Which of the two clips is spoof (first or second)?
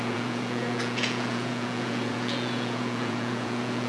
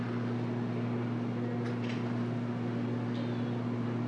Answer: first